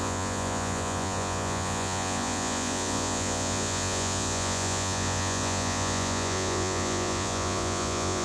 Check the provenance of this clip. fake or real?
fake